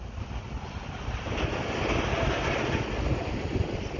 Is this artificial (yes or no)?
no